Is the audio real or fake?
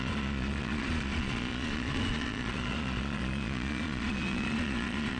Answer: fake